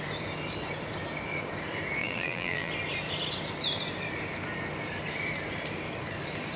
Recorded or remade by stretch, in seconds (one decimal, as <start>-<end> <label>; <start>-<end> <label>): 0.0-2.0 recorded; 2.0-2.7 remade; 2.7-6.6 recorded